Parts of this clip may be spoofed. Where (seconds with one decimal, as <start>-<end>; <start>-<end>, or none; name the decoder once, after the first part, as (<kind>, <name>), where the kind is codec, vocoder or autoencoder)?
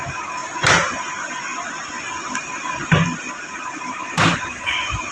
none